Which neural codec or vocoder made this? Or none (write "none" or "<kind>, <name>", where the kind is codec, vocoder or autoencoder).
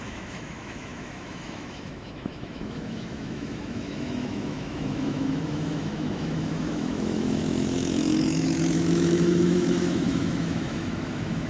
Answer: autoencoder, DAC-VAE